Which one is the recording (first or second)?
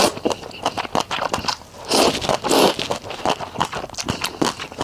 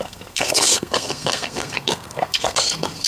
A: first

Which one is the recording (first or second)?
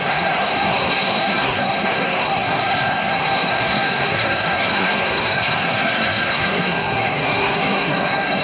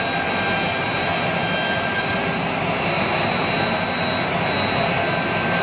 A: second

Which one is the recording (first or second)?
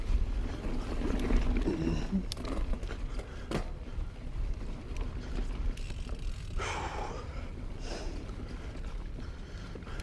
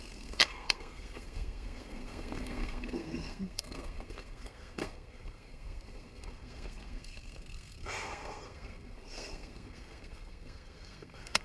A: first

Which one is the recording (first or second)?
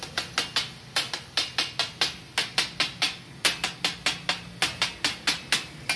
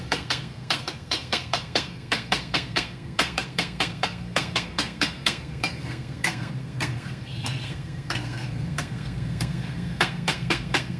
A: first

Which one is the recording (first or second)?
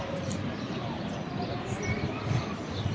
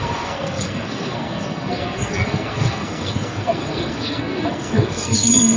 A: first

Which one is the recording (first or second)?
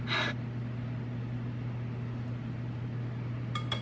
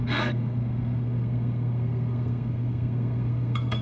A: first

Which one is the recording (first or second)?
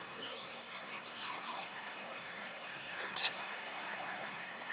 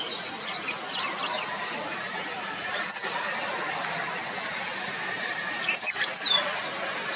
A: second